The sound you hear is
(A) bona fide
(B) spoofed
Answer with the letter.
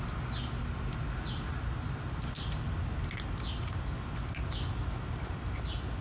A